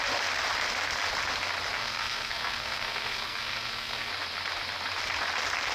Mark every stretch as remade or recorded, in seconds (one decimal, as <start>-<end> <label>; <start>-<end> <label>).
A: 0.0-1.8 recorded; 1.8-4.1 remade; 4.1-5.7 recorded

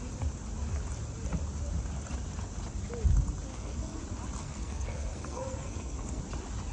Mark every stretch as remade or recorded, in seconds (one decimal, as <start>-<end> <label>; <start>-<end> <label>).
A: 0.0-3.5 recorded; 3.5-4.0 remade; 4.0-4.4 recorded; 4.4-6.2 remade; 6.2-6.7 recorded

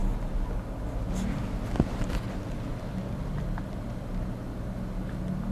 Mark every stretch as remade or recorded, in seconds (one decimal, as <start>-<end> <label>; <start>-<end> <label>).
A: 0.0-5.5 recorded

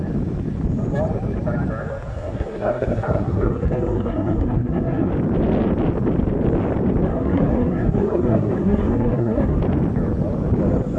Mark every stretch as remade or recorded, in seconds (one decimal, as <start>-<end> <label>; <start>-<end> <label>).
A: 0.0-2.1 recorded; 2.1-5.1 remade; 5.1-7.1 recorded; 7.1-9.6 remade; 9.6-11.0 recorded

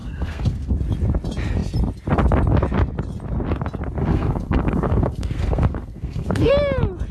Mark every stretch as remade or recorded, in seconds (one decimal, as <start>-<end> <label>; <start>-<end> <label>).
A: 0.0-0.7 remade; 0.7-4.0 recorded; 4.0-6.5 remade; 6.5-7.1 recorded

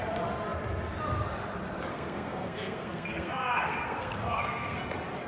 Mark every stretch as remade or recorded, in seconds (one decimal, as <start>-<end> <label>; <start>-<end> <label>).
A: 0.0-1.9 recorded; 1.9-4.8 remade; 4.8-5.3 recorded

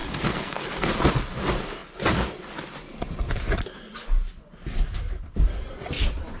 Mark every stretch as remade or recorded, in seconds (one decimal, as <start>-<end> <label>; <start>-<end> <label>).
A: 0.0-0.9 remade; 0.9-6.4 recorded